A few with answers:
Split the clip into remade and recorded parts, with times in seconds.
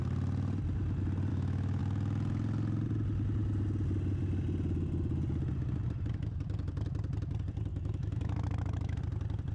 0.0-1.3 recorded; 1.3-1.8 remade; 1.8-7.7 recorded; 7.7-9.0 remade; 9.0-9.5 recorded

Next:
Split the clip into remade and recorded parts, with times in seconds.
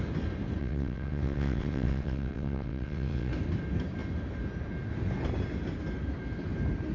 0.0-0.6 recorded; 0.6-3.3 remade; 3.3-6.9 recorded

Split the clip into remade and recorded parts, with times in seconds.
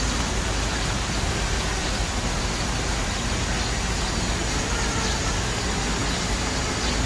0.0-7.1 recorded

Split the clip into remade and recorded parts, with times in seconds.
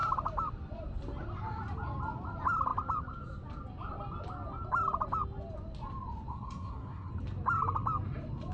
0.0-6.3 recorded; 6.3-7.1 remade; 7.1-8.5 recorded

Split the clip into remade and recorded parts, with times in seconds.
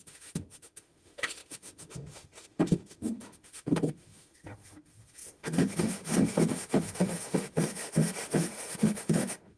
0.0-9.6 remade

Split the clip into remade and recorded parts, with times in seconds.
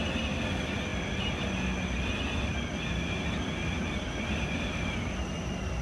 0.0-5.8 recorded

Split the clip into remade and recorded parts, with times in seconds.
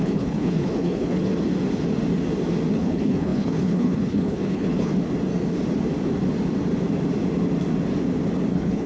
0.0-1.3 remade; 1.3-2.7 recorded; 2.7-4.9 remade; 4.9-8.5 recorded; 8.5-8.9 remade